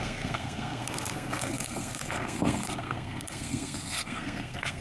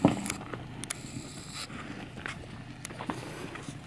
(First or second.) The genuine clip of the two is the second